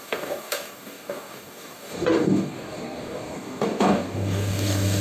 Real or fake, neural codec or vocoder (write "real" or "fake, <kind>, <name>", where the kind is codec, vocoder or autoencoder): fake, codec, DAC